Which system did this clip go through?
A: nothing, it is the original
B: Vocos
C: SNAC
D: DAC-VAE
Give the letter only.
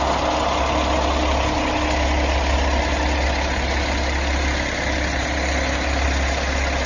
A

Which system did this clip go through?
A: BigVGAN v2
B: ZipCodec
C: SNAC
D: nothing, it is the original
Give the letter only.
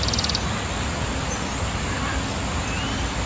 D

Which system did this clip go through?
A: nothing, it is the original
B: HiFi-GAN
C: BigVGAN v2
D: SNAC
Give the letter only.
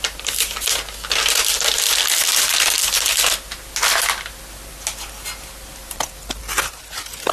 A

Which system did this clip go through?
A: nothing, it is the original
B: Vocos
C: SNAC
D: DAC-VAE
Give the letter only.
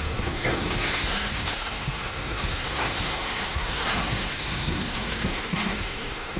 C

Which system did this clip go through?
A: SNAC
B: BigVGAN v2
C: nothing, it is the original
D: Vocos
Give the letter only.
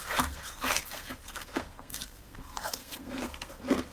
A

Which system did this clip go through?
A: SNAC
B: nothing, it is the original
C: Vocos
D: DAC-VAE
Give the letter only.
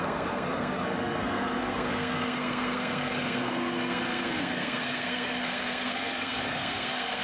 A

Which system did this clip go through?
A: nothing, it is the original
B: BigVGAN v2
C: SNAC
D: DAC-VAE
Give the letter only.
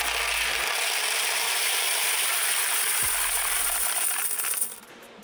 A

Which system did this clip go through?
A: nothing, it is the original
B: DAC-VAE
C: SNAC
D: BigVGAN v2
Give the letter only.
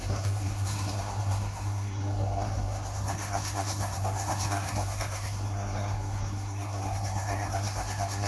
C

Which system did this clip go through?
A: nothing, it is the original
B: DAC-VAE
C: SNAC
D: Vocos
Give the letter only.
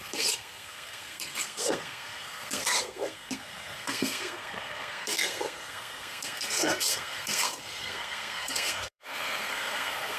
C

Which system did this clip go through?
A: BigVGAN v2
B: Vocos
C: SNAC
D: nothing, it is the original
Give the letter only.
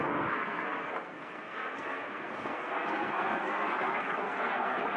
C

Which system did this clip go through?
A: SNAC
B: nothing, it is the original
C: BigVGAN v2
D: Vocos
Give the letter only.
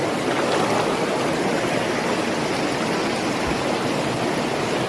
B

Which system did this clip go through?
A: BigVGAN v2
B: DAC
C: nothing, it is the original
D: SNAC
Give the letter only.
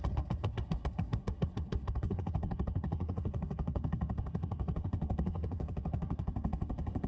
D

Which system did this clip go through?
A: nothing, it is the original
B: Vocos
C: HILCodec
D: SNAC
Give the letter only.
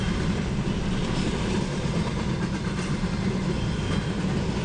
A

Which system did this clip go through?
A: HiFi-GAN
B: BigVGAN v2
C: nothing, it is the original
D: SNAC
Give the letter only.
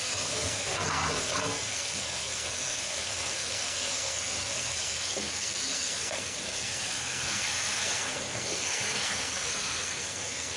D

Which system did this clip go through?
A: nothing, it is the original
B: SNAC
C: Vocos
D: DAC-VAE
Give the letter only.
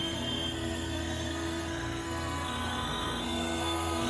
B